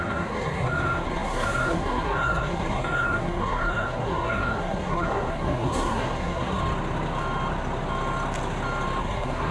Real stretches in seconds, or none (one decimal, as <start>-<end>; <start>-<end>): 6.6-9.0